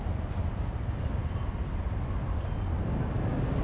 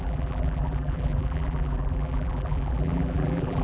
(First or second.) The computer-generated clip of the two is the second